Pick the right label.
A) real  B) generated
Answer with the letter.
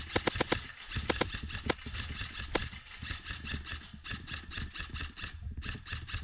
A